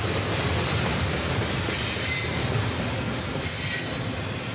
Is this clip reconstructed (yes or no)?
no